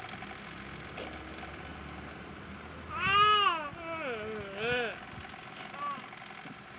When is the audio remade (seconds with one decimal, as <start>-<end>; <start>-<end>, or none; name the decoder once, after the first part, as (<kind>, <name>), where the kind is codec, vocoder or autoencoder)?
none